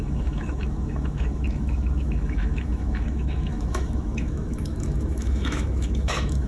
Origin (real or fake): fake